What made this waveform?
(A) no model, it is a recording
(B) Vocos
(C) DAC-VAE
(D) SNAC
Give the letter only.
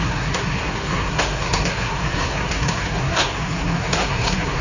D